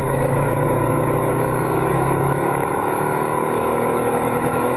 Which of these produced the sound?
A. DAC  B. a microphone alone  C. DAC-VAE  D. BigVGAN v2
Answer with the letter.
A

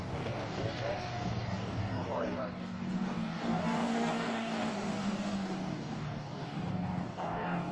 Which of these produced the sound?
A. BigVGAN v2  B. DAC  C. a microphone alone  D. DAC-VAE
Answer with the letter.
B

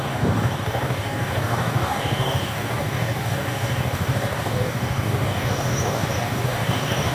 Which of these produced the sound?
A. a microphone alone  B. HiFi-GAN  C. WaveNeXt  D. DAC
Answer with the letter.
D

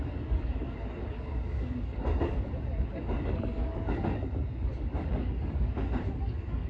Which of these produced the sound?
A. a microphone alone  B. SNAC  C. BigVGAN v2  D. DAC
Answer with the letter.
D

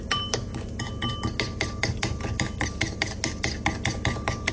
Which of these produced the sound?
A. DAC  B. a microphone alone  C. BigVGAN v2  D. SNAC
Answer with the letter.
B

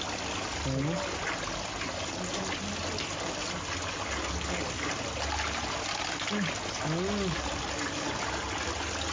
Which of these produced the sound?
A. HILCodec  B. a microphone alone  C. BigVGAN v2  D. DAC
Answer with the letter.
B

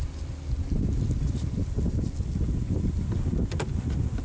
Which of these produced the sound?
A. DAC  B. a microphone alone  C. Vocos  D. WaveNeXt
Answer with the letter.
B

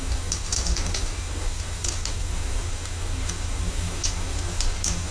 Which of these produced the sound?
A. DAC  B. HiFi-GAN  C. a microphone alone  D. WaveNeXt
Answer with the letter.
A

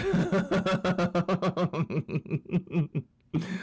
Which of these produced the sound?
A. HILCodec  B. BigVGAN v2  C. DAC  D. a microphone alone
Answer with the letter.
D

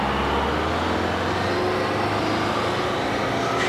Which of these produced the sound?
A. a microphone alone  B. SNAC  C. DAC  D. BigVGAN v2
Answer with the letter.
A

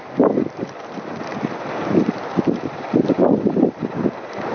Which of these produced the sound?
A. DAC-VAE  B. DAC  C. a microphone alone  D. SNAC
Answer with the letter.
C